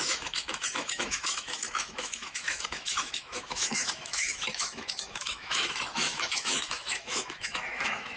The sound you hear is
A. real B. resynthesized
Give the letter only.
B